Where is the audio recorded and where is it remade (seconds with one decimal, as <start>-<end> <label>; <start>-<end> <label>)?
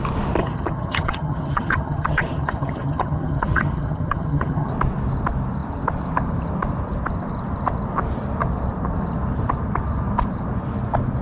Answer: 0.0-0.4 recorded; 0.4-4.7 remade; 4.7-11.2 recorded